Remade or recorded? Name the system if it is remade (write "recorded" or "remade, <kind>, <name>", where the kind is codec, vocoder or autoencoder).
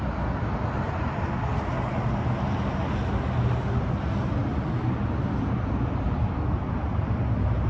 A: recorded